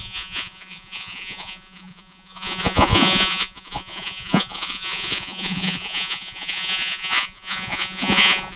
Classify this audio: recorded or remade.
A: remade